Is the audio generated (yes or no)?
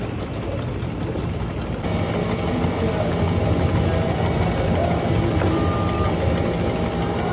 no